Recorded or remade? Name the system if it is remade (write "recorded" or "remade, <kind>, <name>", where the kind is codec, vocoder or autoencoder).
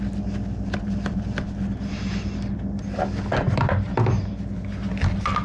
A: recorded